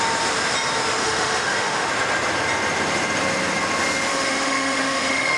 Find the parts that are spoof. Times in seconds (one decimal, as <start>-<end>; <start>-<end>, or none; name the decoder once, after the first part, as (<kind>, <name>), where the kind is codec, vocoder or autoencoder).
1.0-1.9 (autoencoder, DAC-VAE); 4.1-5.4